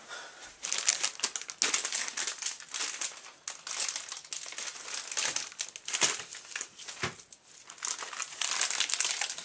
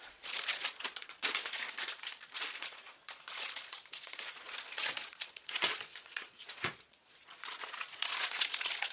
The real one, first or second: first